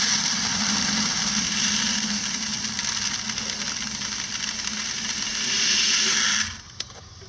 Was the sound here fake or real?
real